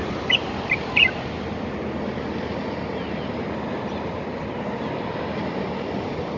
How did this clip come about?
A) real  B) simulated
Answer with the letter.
A